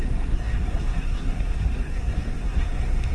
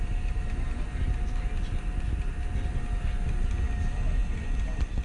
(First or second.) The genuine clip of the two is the second